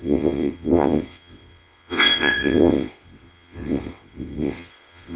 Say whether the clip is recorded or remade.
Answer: remade